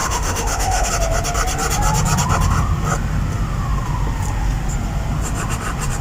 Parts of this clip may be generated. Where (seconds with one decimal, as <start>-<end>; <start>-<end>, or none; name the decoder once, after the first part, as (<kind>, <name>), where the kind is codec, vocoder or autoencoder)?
0.0-0.9 (autoencoder, DAC-VAE)